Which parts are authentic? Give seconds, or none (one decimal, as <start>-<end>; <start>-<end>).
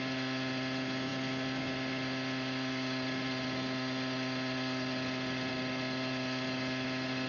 0.0-7.3